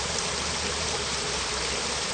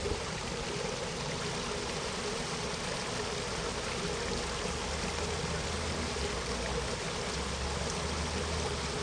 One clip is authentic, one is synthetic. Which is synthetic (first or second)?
first